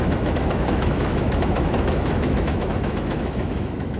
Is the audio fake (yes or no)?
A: yes